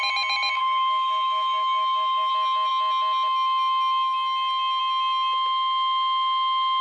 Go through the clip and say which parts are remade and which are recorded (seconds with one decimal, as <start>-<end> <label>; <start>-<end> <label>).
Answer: 0.0-0.6 recorded; 0.6-2.3 remade; 2.3-6.8 recorded